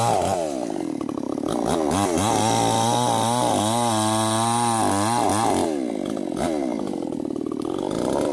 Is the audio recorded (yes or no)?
yes